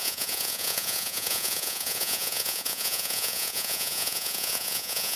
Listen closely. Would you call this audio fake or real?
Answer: fake